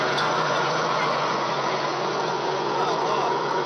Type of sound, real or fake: fake